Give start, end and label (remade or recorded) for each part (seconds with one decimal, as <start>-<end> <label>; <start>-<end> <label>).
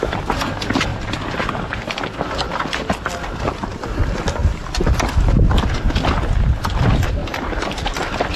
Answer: 0.0-7.2 recorded; 7.2-8.0 remade; 8.0-8.4 recorded